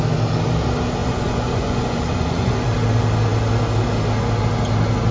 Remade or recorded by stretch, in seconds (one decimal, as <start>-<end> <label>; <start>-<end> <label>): 0.0-1.0 recorded; 1.0-2.5 remade; 2.5-5.1 recorded